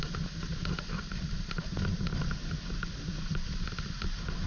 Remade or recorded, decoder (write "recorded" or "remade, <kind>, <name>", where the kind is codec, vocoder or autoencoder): recorded